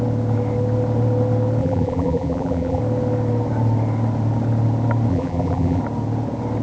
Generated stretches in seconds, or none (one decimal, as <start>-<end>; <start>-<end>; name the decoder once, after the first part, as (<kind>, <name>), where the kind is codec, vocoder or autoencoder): 1.6-2.8 (vocoder, BigVGAN v2); 5.1-5.8